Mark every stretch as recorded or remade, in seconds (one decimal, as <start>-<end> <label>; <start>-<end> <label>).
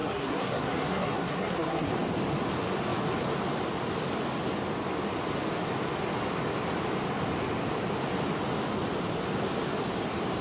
0.0-1.9 remade; 1.9-10.4 recorded